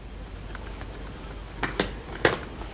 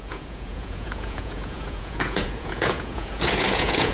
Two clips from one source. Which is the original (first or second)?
first